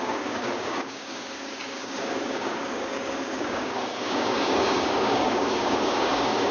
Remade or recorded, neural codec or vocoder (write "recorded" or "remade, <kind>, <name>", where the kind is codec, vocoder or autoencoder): remade, codec, DAC